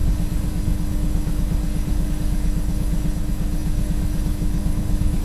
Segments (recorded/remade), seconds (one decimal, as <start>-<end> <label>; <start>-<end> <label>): 0.0-5.2 remade